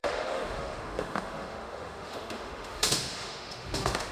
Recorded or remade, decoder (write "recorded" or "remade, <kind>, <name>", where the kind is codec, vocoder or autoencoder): remade, autoencoder, DAC-VAE